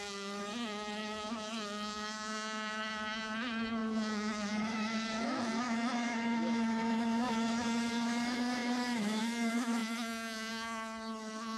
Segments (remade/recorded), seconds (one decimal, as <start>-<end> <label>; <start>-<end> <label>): 0.0-11.6 remade